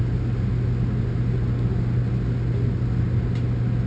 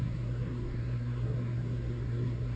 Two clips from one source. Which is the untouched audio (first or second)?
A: first